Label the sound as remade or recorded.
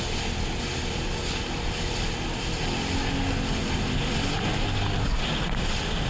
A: recorded